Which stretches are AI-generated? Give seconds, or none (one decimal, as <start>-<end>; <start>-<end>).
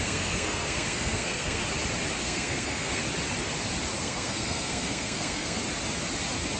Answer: 0.0-1.6; 2.2-3.0; 4.0-5.6